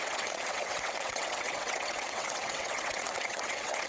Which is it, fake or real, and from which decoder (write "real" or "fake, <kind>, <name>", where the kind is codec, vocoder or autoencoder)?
fake, vocoder, WaveNeXt